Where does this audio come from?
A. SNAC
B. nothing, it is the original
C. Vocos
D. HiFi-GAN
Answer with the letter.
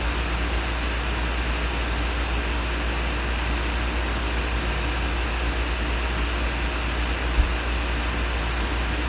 B